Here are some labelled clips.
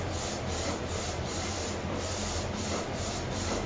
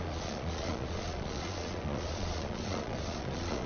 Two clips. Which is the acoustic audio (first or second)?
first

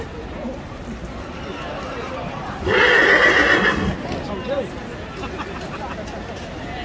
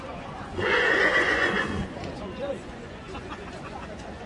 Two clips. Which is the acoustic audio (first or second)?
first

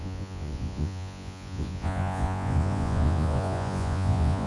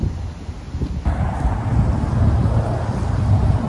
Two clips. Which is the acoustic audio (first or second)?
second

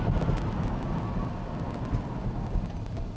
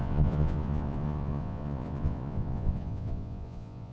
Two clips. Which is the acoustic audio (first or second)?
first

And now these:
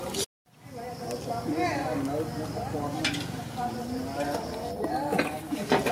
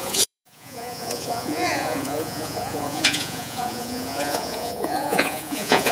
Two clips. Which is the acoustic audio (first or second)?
first